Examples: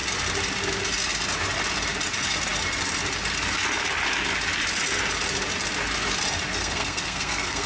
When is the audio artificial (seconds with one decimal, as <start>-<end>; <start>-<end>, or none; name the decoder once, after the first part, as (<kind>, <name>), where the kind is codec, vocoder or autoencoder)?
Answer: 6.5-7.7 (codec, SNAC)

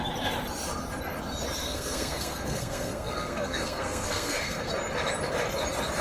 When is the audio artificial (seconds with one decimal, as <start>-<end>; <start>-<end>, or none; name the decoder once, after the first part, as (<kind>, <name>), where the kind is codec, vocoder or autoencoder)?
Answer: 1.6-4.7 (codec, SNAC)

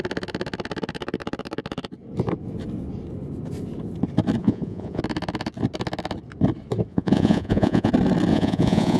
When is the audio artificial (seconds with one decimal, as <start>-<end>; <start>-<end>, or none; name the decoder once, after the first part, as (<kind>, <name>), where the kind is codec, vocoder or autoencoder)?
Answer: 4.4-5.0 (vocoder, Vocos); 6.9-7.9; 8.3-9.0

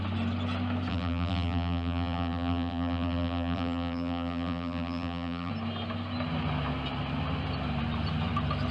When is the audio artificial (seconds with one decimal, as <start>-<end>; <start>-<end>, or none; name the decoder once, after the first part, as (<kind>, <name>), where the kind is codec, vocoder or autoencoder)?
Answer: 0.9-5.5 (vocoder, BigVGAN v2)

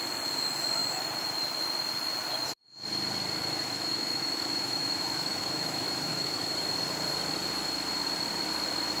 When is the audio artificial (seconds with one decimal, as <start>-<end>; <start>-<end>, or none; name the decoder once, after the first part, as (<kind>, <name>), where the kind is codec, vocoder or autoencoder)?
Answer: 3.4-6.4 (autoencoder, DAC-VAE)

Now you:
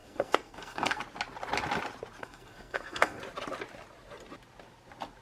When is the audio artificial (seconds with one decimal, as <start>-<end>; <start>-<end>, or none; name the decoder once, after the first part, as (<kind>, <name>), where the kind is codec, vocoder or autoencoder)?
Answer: 0.0-1.0 (codec, SNAC); 2.2-3.2

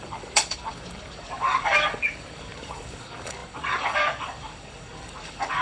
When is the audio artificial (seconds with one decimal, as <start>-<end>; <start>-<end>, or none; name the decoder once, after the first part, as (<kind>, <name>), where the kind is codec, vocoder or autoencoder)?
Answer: 0.0-5.6 (codec, DAC)